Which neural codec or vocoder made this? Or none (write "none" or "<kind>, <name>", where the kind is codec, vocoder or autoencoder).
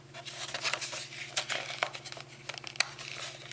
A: none